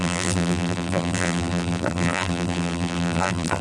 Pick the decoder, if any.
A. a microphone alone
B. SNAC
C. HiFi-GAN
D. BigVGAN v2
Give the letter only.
D